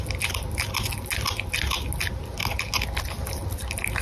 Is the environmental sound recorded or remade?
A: recorded